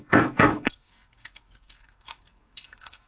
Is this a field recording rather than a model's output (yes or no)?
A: no